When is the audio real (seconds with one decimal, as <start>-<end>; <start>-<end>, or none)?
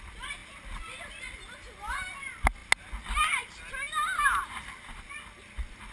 0.0-5.9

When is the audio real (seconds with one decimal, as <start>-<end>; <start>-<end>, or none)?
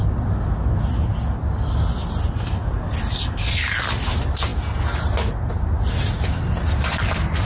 0.0-7.4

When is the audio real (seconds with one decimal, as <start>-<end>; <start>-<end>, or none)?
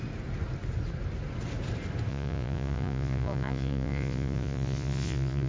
0.0-2.1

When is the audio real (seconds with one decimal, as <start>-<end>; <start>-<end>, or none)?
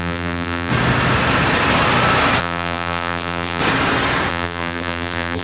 0.7-2.4; 3.6-4.3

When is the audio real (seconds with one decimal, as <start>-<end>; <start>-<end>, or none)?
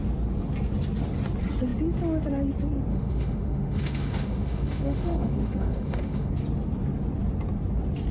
0.0-2.9; 6.3-8.1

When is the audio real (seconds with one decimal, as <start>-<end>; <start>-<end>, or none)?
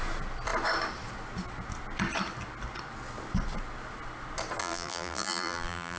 0.0-4.6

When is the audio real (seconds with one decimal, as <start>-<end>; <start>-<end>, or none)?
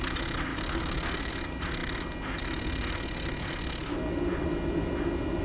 0.0-0.5; 1.3-5.4